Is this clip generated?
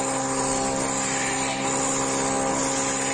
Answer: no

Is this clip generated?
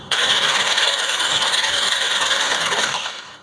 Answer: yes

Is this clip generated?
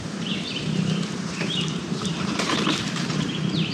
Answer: yes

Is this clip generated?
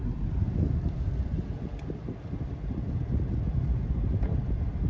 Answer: no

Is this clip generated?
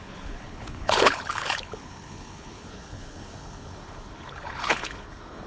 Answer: yes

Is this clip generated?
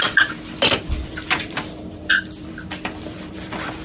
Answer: yes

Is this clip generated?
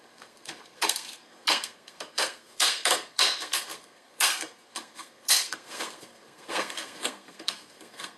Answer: yes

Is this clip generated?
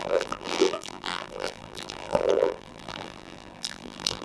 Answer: yes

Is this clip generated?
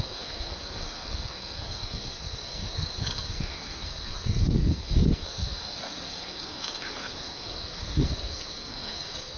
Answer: yes